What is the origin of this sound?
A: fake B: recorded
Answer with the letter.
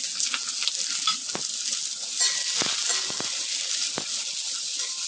B